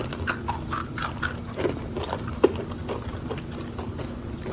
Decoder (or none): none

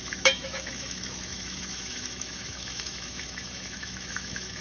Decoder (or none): autoencoder, DAC-VAE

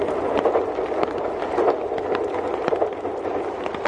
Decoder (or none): none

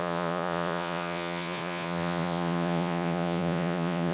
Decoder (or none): vocoder, Vocos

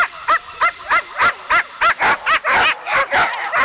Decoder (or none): none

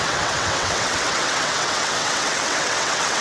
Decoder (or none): vocoder, WaveNeXt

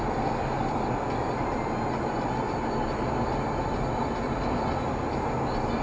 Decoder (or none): none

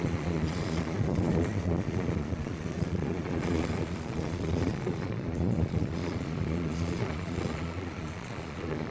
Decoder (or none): vocoder, Vocos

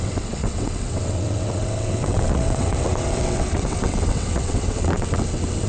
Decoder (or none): vocoder, WaveNeXt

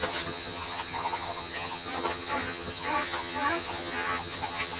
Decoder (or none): vocoder, HiFi-GAN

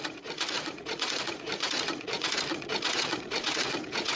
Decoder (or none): vocoder, Vocos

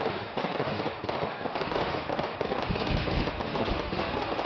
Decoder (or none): autoencoder, DAC-VAE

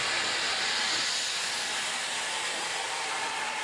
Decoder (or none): none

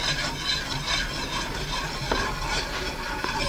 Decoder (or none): none